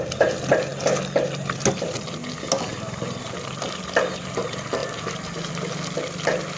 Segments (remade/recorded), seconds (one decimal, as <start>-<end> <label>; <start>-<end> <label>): 0.0-4.8 recorded; 4.8-5.5 remade; 5.5-6.6 recorded